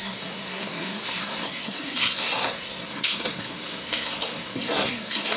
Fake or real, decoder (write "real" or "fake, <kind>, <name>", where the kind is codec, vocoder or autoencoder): fake, codec, SNAC